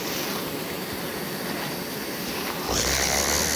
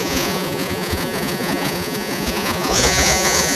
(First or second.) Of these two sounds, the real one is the first